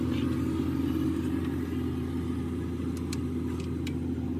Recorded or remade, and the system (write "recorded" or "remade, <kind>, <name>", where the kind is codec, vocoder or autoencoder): recorded